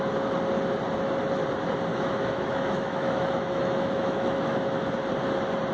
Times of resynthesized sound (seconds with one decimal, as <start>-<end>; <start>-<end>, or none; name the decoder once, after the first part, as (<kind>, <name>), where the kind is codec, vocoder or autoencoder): 1.9-4.9 (autoencoder, DAC-VAE)